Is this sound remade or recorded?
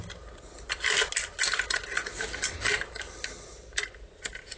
recorded